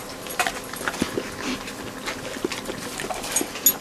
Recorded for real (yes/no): yes